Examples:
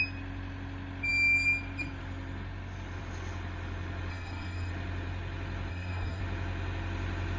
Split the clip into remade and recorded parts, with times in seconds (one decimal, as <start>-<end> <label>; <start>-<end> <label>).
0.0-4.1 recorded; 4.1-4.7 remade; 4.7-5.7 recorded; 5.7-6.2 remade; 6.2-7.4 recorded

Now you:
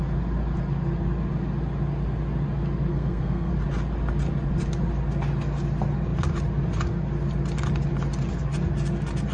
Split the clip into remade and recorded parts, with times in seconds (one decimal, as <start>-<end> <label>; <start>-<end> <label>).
0.0-2.9 recorded; 2.9-3.5 remade; 3.5-9.3 recorded

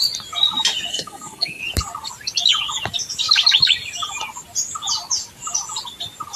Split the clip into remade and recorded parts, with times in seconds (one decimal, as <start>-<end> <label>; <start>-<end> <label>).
0.0-0.9 recorded; 0.9-1.6 remade; 1.6-6.4 recorded

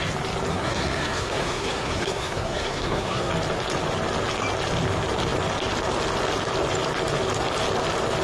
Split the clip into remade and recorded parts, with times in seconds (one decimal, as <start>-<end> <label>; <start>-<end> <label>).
0.0-0.5 recorded; 0.5-3.3 remade; 3.3-8.2 recorded

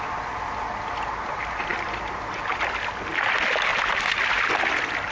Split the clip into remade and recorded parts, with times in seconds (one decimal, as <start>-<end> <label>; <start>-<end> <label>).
0.0-5.1 recorded

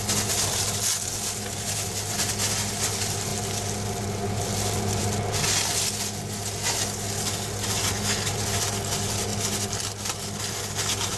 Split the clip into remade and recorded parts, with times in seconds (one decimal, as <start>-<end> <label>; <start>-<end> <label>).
0.0-11.2 recorded

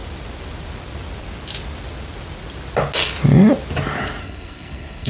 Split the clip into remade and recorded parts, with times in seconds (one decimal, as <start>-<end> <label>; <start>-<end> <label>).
0.0-4.2 recorded; 4.2-5.1 remade

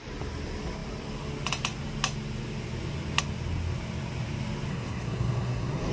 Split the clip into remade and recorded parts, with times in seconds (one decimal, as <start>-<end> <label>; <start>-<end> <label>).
0.0-4.7 recorded; 4.7-5.9 remade